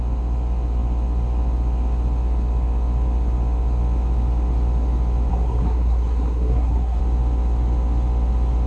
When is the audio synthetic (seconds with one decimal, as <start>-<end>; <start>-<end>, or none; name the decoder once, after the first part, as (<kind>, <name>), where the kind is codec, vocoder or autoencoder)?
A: 5.3-7.0 (codec, SNAC)